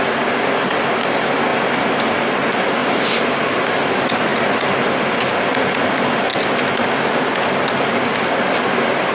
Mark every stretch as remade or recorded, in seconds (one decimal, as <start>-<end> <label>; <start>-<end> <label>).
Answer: 0.0-9.1 recorded